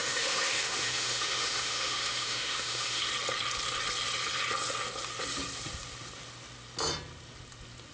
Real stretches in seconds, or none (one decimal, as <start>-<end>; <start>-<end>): 3.1-7.9